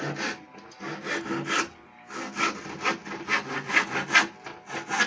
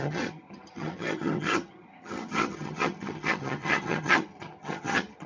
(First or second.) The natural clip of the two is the first